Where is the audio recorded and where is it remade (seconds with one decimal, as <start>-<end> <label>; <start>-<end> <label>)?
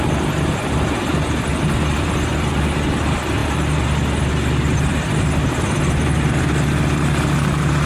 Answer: 0.0-7.9 recorded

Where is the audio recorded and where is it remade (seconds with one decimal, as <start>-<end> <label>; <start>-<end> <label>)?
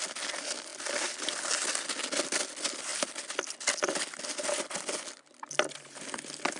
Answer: 0.0-6.6 recorded